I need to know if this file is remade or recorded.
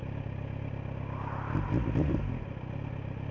recorded